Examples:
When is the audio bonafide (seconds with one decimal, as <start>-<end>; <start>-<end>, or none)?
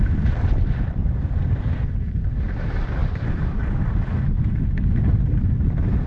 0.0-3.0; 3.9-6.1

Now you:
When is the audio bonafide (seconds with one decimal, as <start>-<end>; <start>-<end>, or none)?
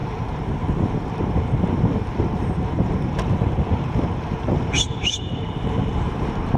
none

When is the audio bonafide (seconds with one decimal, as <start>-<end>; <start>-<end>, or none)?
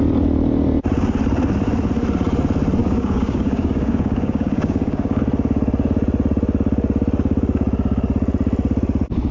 0.0-2.8; 5.2-9.3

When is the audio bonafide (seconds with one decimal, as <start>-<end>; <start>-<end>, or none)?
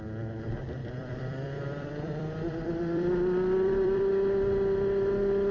0.0-0.8; 4.1-5.5